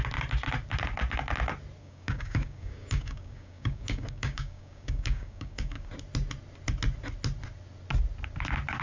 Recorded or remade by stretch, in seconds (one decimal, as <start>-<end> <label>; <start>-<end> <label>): 0.0-1.8 recorded; 1.8-5.9 remade; 5.9-8.8 recorded